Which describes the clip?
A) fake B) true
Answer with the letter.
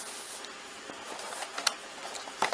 B